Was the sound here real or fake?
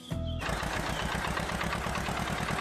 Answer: real